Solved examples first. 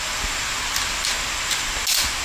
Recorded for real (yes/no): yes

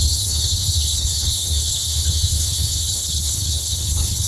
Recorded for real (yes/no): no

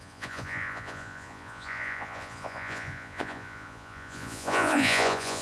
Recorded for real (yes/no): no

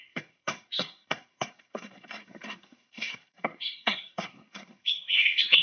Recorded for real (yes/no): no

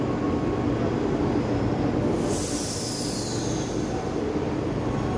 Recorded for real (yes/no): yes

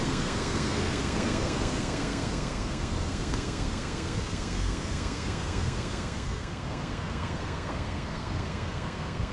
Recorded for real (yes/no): no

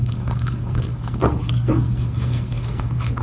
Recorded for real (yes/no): no